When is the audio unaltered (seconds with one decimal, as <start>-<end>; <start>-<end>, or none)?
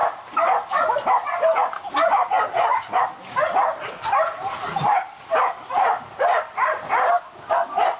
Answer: 0.0-8.0